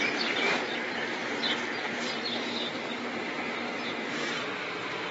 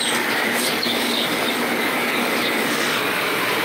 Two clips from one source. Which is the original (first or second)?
first